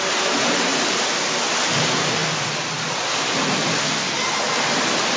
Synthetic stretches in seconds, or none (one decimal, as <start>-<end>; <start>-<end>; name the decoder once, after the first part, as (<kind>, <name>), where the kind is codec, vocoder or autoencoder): 2.2-3.8 (vocoder, BigVGAN v2)